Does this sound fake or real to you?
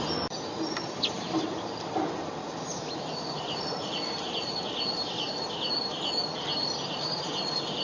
real